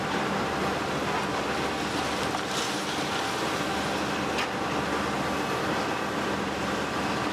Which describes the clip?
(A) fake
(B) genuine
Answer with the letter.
B